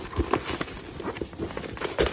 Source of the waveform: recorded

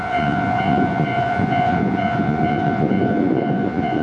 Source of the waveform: remade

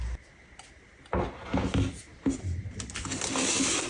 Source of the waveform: recorded